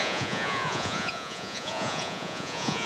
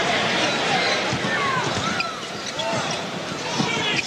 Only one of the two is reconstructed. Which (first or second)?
first